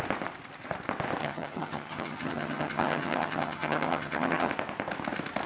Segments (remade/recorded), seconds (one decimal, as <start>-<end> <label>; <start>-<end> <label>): 0.0-1.2 recorded; 1.2-4.5 remade; 4.5-5.5 recorded